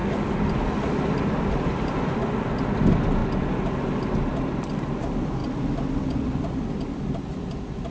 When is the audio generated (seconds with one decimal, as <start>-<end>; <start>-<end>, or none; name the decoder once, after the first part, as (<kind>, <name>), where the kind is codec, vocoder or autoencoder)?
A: none